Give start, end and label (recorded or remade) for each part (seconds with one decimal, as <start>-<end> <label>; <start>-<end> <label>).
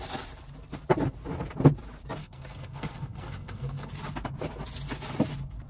0.0-2.2 recorded; 2.2-3.9 remade; 3.9-5.7 recorded